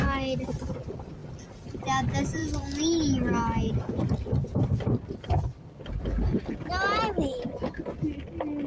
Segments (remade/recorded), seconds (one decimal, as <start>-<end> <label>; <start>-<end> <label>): 0.0-8.7 recorded